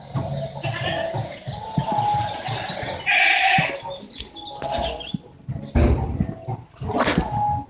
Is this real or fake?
real